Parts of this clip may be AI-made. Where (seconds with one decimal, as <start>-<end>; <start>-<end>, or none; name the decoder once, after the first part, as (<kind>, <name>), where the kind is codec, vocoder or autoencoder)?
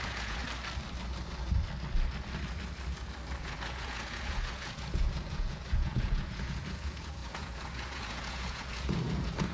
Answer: 0.0-0.4 (vocoder, Vocos); 3.4-9.5